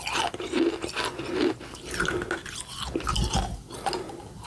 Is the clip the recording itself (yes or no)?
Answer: yes